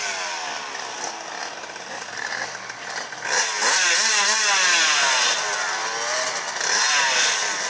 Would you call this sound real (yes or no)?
yes